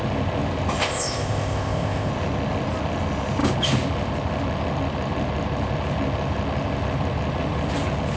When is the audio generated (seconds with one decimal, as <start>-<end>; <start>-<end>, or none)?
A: 0.8-2.1